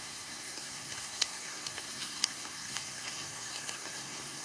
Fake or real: fake